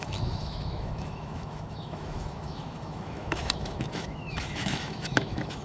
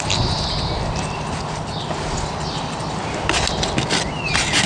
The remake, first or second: first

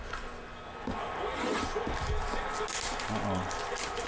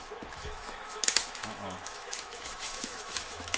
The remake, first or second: second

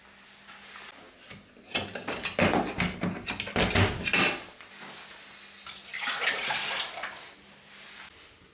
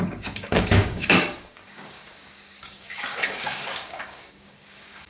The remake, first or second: second